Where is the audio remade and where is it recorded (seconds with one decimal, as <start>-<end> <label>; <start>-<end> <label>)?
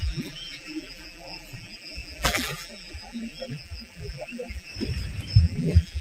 0.0-4.7 remade; 4.7-5.4 recorded; 5.4-6.0 remade